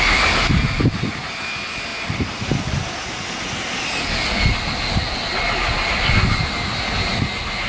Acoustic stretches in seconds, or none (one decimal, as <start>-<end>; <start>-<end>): 0.0-7.7